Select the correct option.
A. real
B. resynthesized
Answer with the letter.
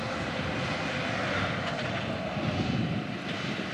A